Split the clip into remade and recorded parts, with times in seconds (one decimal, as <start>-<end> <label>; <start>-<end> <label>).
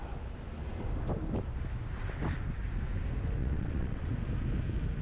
0.0-3.4 recorded; 3.4-4.1 remade; 4.1-5.0 recorded